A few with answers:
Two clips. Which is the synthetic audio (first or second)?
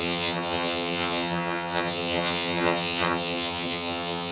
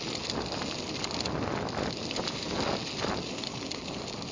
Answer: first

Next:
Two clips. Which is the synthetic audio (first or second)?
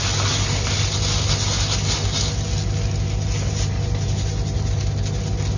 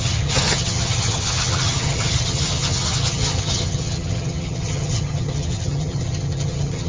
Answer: second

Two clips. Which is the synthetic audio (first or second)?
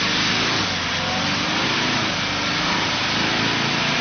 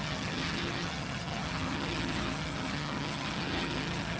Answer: second